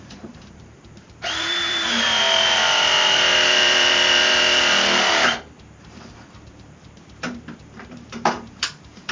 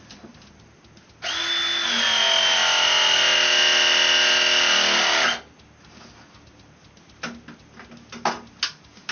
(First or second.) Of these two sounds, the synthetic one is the first